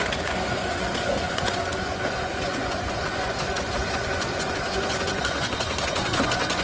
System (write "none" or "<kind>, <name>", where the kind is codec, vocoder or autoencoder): vocoder, Vocos